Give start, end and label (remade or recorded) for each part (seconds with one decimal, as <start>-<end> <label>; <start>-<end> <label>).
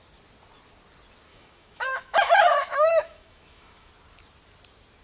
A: 0.0-1.3 recorded; 1.3-3.9 remade; 3.9-5.0 recorded